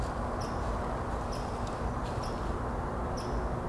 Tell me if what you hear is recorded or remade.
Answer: recorded